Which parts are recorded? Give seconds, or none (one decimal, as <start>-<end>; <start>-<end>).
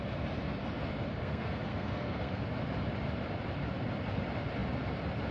0.0-1.2; 2.4-5.3